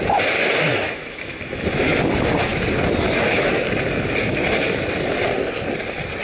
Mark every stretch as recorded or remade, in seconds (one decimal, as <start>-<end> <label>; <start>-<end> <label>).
0.0-0.7 recorded; 0.7-1.4 remade; 1.4-6.2 recorded